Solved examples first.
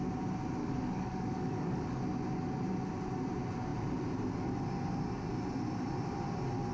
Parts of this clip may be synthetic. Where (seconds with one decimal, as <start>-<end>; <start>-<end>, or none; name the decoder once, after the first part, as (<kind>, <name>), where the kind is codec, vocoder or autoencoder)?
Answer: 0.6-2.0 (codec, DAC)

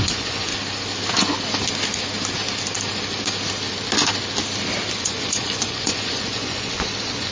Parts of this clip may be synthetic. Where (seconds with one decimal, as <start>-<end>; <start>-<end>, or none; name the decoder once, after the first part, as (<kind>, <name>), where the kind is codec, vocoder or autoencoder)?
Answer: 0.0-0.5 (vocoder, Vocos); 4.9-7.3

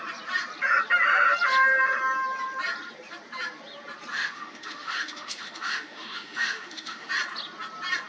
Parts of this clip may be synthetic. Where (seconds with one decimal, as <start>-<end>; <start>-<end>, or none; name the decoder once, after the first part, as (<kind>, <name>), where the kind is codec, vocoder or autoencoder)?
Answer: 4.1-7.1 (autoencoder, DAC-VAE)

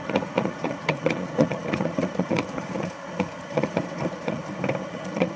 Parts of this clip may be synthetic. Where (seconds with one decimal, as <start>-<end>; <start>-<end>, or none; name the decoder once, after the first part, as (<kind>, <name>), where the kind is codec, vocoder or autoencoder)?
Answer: 0.0-4.4 (vocoder, Vocos); 4.9-5.4

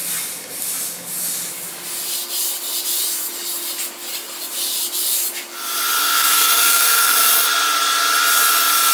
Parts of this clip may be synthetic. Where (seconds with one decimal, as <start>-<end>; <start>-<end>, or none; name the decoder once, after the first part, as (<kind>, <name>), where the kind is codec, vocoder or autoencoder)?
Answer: 6.0-7.1 (codec, SNAC)